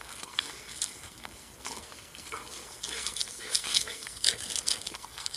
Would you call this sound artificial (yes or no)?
yes